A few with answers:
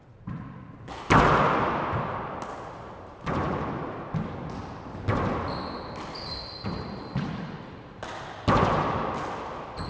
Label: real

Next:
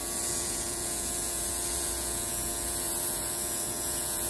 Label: fake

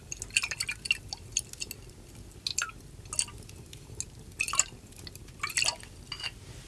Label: real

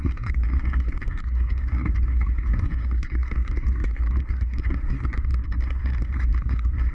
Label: fake